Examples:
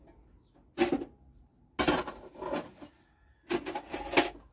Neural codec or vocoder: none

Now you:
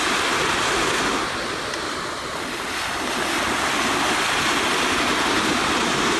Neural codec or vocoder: none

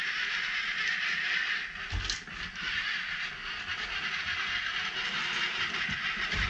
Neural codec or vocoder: none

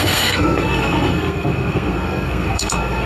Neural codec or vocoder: codec, SNAC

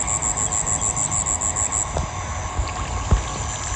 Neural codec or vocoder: none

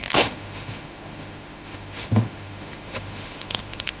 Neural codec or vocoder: autoencoder, DAC-VAE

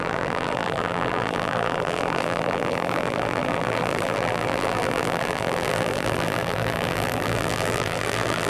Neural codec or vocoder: vocoder, BigVGAN v2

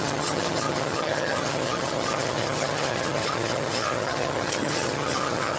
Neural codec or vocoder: vocoder, HiFi-GAN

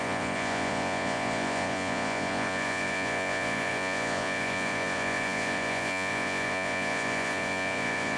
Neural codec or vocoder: vocoder, Vocos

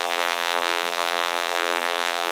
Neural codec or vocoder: vocoder, BigVGAN v2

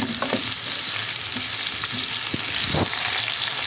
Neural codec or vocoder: none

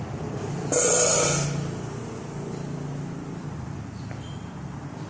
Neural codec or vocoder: none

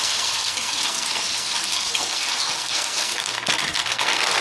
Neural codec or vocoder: codec, SNAC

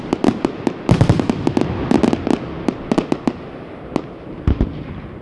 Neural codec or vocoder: none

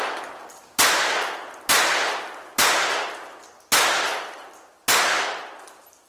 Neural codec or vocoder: none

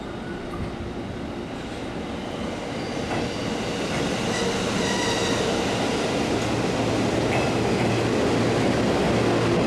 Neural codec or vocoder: none